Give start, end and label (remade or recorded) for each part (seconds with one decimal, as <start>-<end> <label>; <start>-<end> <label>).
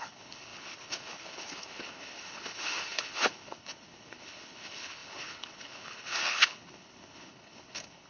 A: 0.0-8.1 remade